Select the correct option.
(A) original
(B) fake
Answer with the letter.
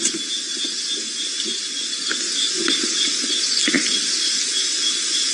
A